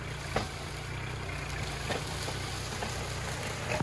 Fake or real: real